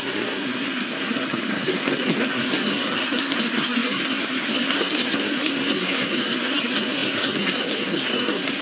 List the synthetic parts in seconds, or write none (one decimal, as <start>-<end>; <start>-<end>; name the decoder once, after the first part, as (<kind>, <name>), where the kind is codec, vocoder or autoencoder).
0.0-8.6 (codec, SNAC)